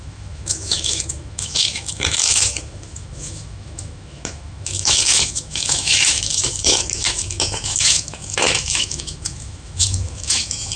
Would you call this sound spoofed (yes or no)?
yes